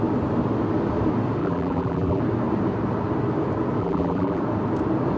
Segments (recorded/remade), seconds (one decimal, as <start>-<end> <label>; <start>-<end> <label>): 0.0-1.4 recorded; 1.4-2.2 remade; 2.2-3.8 recorded; 3.8-4.4 remade; 4.4-5.2 recorded

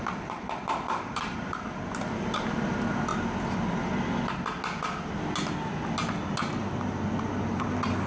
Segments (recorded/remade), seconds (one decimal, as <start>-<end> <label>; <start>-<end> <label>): 0.0-3.1 remade; 3.1-8.1 recorded

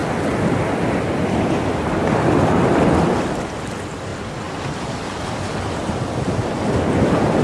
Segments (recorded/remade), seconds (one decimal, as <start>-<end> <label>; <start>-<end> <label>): 0.0-7.4 recorded

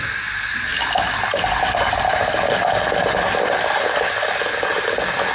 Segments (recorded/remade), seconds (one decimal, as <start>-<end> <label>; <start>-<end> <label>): 0.0-5.3 recorded